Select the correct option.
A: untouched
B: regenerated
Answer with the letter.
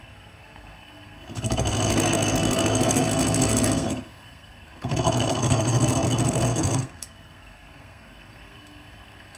B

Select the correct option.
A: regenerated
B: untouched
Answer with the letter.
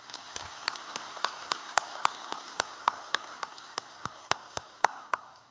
A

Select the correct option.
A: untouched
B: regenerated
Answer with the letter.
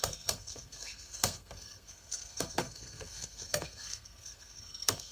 B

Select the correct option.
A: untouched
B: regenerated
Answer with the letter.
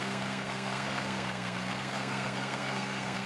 B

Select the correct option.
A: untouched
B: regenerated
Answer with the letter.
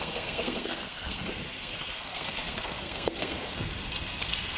B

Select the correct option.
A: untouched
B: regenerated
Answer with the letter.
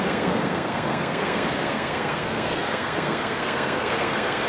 B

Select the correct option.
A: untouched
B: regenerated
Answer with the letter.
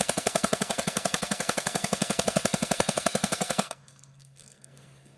B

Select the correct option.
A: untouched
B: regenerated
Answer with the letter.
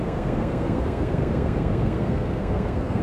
B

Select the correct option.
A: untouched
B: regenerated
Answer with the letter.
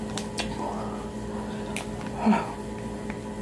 A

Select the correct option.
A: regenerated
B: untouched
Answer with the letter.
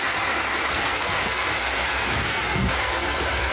A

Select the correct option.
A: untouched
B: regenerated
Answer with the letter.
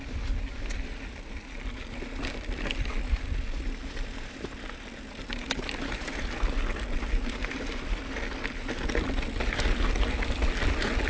A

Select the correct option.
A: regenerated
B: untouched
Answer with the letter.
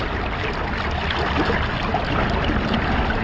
B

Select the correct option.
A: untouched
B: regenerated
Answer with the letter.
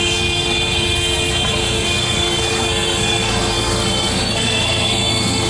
B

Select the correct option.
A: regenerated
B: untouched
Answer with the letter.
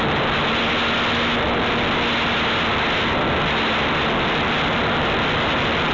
B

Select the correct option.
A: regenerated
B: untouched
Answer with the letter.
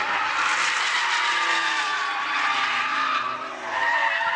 B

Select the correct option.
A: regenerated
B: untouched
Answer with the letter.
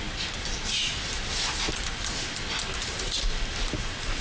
B